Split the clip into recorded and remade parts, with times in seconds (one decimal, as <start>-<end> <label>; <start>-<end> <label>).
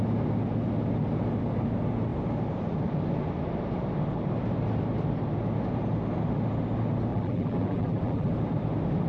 0.0-7.1 recorded; 7.1-8.3 remade; 8.3-9.1 recorded